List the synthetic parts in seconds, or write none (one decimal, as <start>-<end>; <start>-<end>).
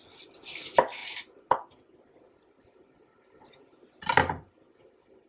0.0-5.3